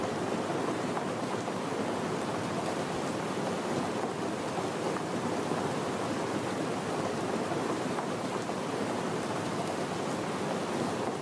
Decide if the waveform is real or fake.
real